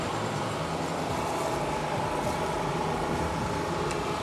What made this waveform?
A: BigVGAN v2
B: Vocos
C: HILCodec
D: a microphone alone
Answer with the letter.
A